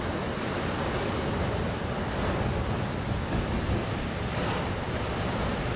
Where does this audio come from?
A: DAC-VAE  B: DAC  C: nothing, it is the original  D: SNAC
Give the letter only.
C